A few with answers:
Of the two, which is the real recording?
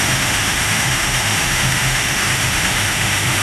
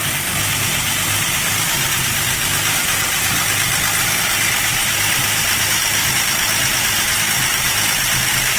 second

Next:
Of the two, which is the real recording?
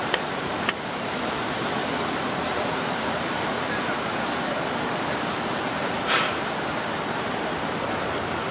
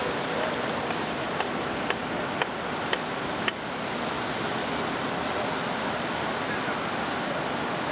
second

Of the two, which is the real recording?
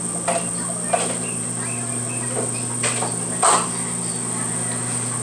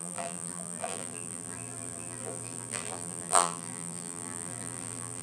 first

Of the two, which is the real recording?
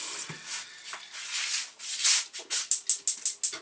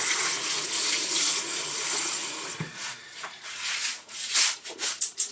first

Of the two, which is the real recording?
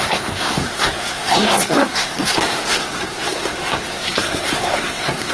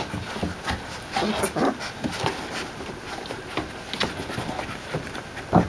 second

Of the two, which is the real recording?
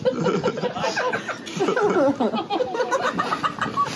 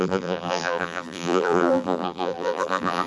first